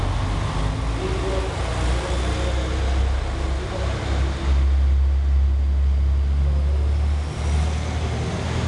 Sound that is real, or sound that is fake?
real